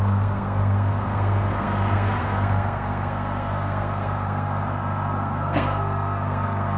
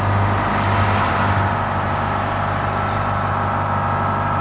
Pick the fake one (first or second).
first